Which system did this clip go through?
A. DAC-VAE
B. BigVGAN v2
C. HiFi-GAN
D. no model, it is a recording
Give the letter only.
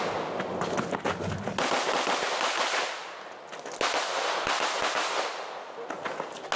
D